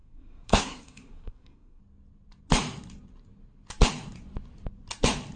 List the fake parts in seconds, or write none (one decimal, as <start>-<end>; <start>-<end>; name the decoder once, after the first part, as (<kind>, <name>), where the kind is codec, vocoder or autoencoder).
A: 0.0-1.8 (codec, SNAC)